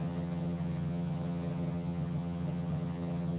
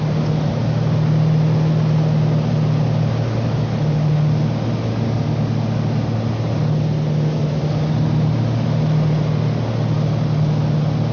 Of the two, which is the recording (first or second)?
second